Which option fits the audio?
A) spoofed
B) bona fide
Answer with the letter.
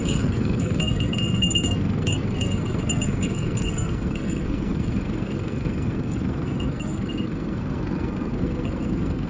A